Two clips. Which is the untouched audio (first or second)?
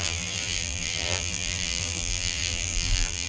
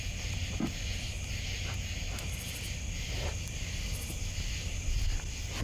second